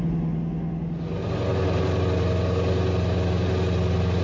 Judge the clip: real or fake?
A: real